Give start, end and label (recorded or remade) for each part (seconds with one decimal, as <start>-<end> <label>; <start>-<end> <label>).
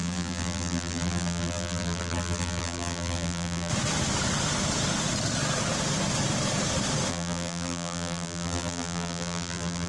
0.0-3.7 remade; 3.7-7.1 recorded; 7.1-9.9 remade